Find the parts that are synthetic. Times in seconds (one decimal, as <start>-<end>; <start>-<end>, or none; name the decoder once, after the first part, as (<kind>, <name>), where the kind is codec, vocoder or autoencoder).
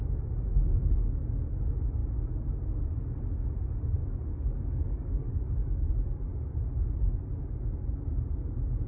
4.0-5.9 (codec, DAC)